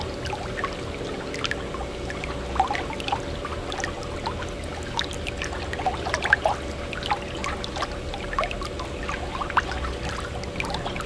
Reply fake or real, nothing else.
real